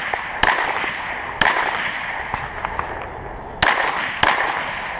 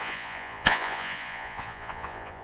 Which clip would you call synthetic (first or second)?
second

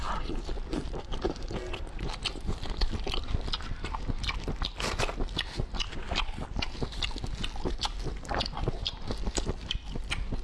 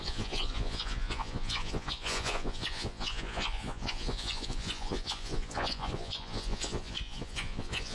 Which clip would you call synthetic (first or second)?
second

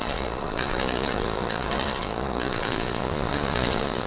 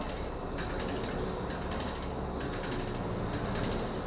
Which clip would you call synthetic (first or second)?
first